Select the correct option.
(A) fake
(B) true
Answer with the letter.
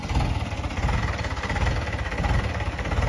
B